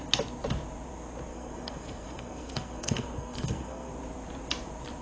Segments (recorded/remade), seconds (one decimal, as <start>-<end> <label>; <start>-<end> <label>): 0.0-1.3 recorded; 1.3-3.9 remade; 3.9-5.0 recorded